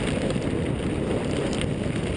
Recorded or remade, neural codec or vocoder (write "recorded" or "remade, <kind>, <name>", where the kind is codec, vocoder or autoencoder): recorded